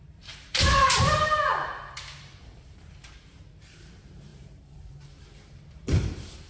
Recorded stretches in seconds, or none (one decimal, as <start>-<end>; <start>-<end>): none